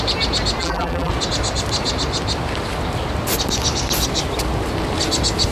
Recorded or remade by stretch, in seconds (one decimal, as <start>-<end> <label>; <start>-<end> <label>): 0.0-0.6 recorded; 0.6-1.1 remade; 1.1-5.5 recorded